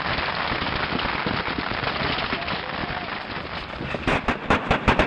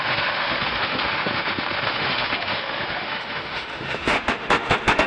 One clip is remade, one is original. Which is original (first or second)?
first